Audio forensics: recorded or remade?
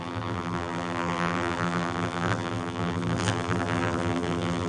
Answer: remade